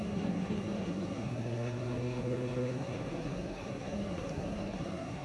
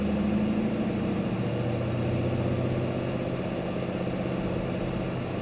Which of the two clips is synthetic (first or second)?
first